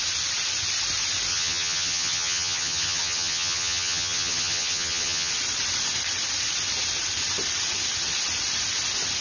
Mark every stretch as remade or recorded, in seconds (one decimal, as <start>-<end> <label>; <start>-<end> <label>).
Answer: 0.0-1.3 recorded; 1.3-5.3 remade; 5.3-9.2 recorded

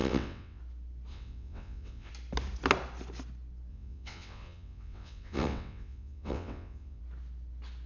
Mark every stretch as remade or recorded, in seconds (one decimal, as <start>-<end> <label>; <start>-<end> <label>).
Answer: 0.0-0.6 remade; 0.6-1.1 recorded; 1.1-2.1 remade; 2.1-3.7 recorded; 3.7-7.0 remade; 7.0-7.9 recorded